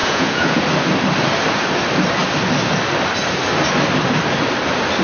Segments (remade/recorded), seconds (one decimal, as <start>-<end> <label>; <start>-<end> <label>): 0.0-0.6 remade; 0.6-5.0 recorded